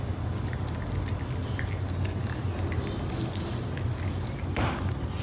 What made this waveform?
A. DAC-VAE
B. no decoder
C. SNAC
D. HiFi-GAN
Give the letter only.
B